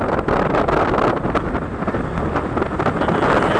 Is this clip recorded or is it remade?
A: recorded